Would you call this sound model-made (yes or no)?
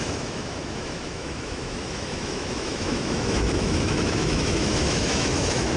yes